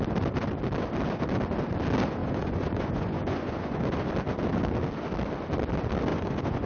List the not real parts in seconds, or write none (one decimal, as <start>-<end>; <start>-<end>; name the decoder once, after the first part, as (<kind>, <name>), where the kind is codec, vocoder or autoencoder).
2.2-3.8 (vocoder, Vocos); 6.1-6.7